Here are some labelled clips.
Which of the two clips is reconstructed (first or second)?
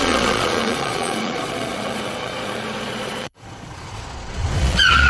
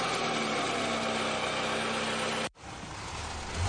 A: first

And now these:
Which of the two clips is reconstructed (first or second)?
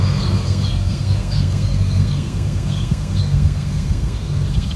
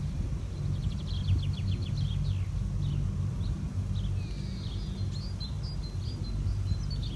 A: first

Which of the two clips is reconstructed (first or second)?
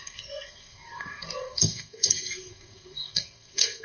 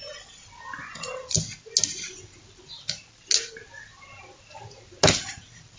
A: first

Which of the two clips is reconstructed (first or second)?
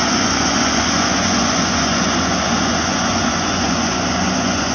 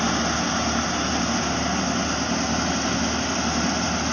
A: first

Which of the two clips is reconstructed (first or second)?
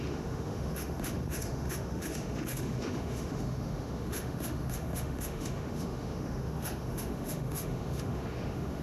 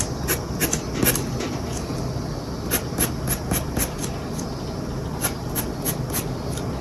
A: first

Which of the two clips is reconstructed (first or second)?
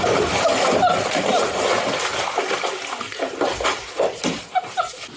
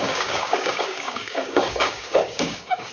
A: second